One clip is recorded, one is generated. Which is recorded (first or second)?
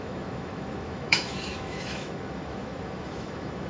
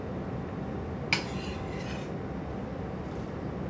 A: second